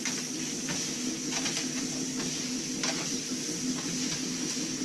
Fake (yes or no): no